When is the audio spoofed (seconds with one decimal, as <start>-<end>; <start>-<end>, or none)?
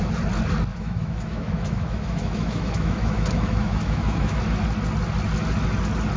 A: 0.7-4.4